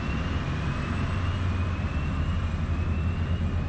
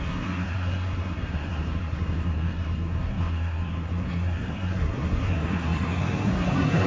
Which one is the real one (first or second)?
first